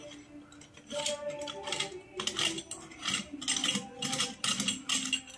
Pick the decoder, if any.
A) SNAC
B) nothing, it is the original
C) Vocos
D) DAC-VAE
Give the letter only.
B